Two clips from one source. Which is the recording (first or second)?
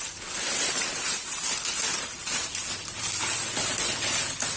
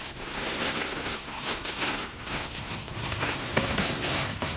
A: first